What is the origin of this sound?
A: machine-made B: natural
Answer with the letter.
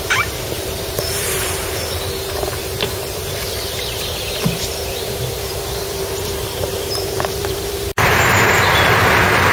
A